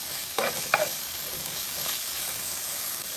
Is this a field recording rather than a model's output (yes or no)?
no